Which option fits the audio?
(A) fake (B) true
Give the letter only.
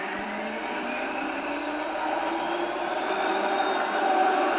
A